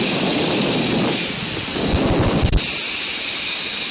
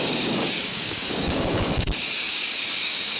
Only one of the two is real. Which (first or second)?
first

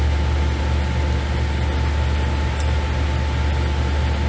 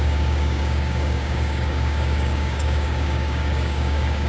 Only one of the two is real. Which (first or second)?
first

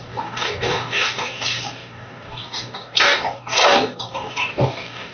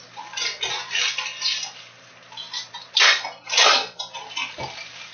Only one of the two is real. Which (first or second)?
second